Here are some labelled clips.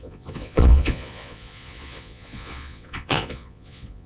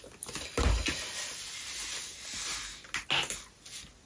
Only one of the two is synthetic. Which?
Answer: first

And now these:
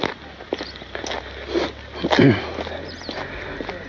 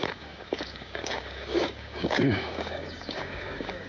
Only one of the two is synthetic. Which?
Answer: second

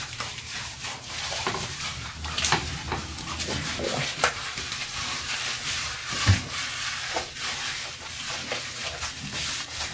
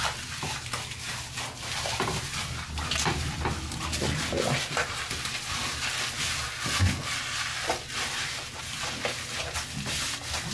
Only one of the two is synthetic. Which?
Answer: first